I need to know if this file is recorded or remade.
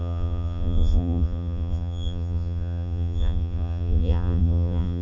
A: remade